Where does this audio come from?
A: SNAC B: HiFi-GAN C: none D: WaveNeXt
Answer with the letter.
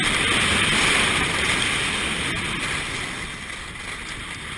C